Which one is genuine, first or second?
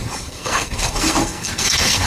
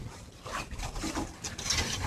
second